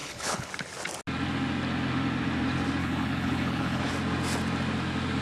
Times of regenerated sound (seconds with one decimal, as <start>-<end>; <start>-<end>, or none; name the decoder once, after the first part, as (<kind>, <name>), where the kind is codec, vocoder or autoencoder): 0.0-0.5 (codec, HILCodec); 2.8-3.8